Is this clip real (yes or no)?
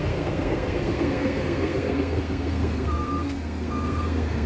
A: no